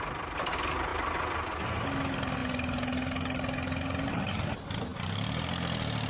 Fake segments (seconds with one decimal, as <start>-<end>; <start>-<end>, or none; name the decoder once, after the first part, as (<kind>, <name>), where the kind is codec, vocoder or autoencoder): none